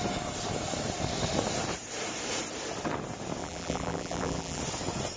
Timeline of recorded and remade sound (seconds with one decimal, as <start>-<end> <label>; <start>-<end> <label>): 0.0-3.4 recorded; 3.4-4.6 remade; 4.6-5.2 recorded

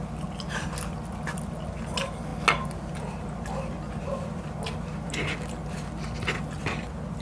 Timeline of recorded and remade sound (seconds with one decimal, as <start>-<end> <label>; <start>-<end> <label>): 0.0-7.2 recorded

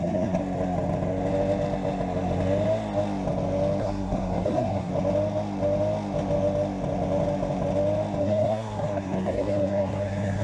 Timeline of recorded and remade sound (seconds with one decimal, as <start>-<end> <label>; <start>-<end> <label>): 0.0-0.4 remade; 0.4-3.8 recorded; 3.8-4.9 remade; 4.9-8.2 recorded; 8.2-10.4 remade

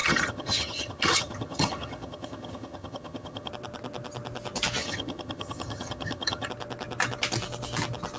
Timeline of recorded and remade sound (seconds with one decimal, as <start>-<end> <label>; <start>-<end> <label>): 0.0-3.5 remade; 3.5-4.8 recorded; 4.8-6.5 remade; 6.5-8.2 recorded